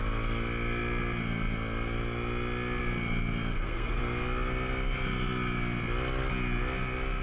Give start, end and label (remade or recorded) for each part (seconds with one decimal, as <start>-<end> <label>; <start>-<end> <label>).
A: 0.0-3.5 recorded; 3.5-4.0 remade; 4.0-7.2 recorded